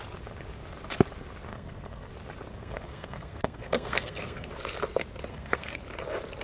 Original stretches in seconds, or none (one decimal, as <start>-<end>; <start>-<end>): 0.0-1.5; 2.1-2.5; 4.5-5.3; 5.8-6.4